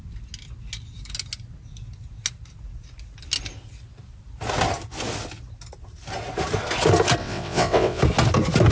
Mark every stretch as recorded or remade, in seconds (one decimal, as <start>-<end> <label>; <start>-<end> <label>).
0.0-7.2 recorded; 7.2-8.0 remade; 8.0-8.7 recorded